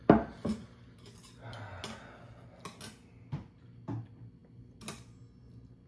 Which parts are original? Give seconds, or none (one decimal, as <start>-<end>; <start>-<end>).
0.0-5.9